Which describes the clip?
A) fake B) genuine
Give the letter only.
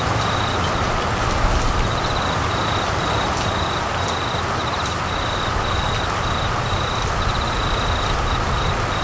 B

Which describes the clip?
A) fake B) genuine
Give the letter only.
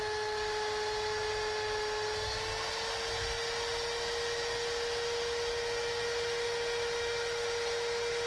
B